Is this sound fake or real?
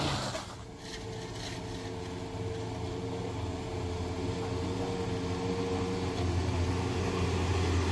real